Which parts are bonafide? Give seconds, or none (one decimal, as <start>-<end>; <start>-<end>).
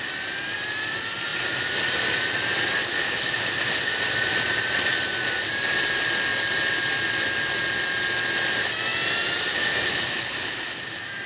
0.0-11.3